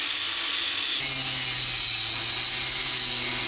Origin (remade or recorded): recorded